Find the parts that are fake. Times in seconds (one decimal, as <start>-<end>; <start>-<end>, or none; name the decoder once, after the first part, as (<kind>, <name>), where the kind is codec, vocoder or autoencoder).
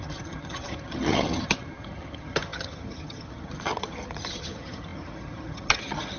0.0-6.2 (vocoder, HiFi-GAN)